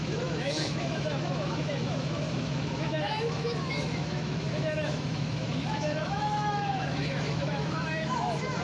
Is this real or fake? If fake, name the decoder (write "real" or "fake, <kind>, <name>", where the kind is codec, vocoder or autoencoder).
fake, autoencoder, DAC-VAE